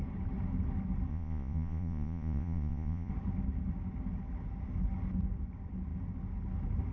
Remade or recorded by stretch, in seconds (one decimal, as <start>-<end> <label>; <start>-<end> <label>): 0.0-1.1 recorded; 1.1-3.1 remade; 3.1-6.9 recorded